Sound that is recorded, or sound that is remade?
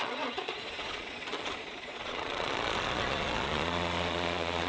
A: remade